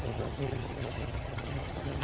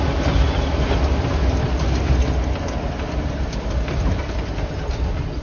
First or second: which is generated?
first